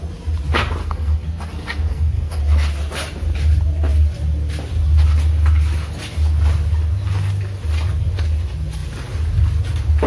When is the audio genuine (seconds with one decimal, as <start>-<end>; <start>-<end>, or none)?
0.0-0.8; 2.4-10.1